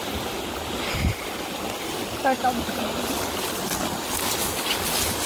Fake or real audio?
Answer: real